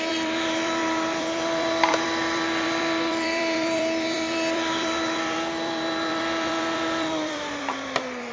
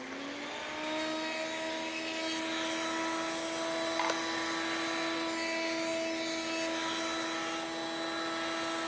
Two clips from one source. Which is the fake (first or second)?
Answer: first